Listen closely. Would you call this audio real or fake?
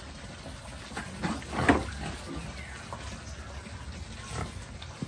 real